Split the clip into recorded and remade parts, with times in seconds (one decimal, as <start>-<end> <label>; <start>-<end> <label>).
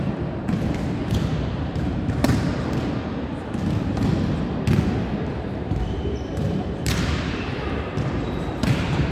0.0-2.5 remade; 2.5-5.5 recorded; 5.5-9.1 remade